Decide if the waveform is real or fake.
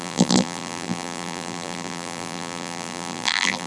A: fake